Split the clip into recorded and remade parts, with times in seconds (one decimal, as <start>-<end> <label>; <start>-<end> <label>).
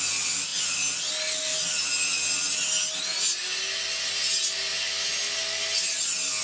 0.0-6.4 recorded